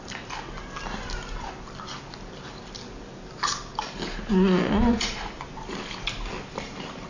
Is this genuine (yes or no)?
yes